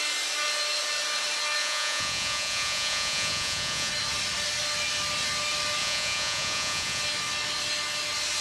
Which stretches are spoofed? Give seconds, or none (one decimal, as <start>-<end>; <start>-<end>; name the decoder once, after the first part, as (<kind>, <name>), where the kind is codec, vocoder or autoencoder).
1.6-3.9 (vocoder, Vocos); 5.8-7.0